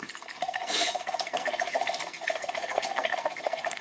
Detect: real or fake fake